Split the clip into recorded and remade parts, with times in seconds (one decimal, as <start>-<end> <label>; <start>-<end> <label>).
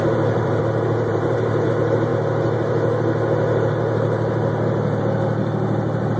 0.0-0.6 remade; 0.6-1.1 recorded; 1.1-1.7 remade; 1.7-6.2 recorded